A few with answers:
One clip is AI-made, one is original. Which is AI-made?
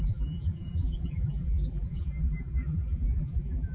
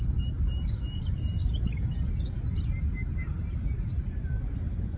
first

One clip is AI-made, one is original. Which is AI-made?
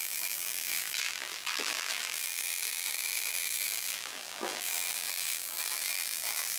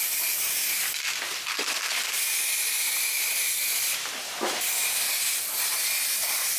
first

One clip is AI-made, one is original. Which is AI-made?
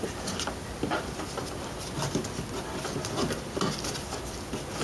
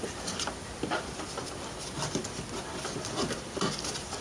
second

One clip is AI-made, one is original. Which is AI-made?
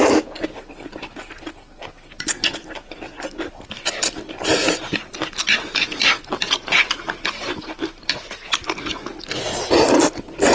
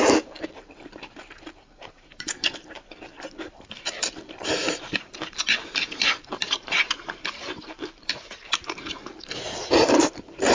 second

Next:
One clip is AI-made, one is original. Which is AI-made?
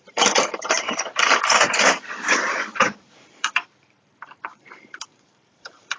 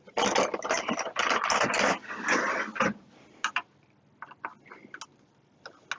first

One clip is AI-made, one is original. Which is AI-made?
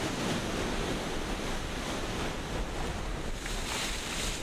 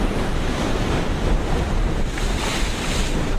second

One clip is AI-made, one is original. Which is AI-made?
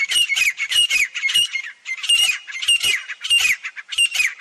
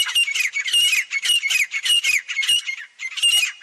first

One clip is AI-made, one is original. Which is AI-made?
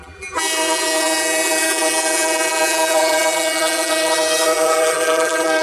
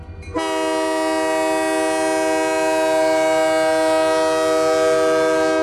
first